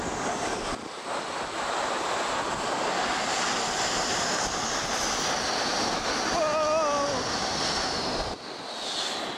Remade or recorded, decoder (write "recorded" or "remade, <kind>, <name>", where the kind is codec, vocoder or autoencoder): recorded